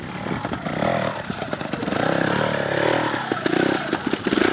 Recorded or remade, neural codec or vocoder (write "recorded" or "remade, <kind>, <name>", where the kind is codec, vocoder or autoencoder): recorded